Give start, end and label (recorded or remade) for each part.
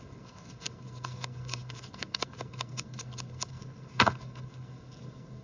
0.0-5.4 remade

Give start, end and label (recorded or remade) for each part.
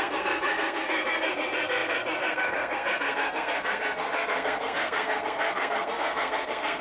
0.0-6.8 remade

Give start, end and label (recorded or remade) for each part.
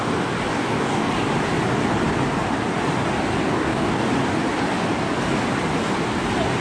0.0-0.5 recorded; 0.5-1.1 remade; 1.1-3.4 recorded; 3.4-4.1 remade; 4.1-6.6 recorded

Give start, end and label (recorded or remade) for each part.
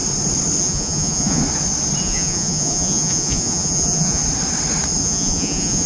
0.0-0.6 recorded; 0.6-1.4 remade; 1.4-2.0 recorded; 2.0-4.2 remade; 4.2-5.0 recorded; 5.0-5.9 remade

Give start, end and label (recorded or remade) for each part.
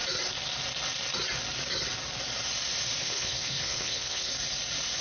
0.0-3.0 recorded; 3.0-4.3 remade; 4.3-5.0 recorded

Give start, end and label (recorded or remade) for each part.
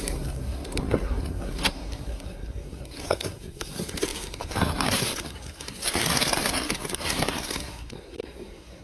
0.0-8.8 remade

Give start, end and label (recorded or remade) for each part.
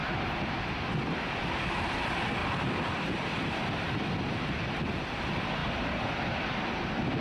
0.0-7.2 recorded